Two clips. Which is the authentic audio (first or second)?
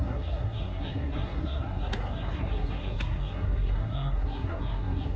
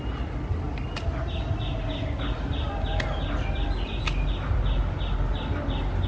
second